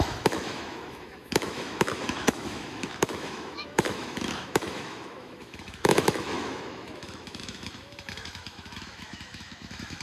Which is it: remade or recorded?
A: remade